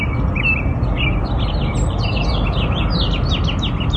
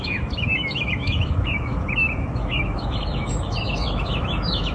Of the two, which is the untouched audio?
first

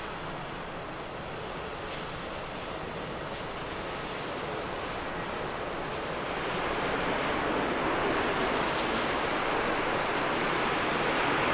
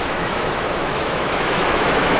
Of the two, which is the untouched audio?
first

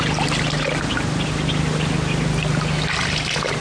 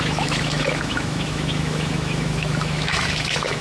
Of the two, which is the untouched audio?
first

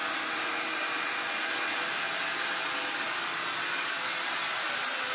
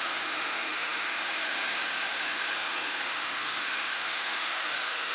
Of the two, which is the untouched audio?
first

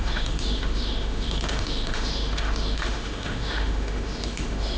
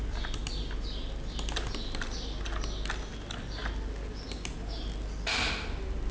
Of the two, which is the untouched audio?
second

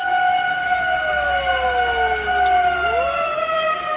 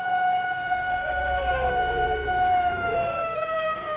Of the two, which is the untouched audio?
first